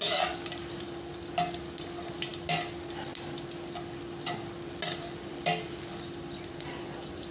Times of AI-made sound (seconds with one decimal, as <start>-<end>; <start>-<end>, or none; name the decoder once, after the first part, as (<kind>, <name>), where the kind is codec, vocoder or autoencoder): none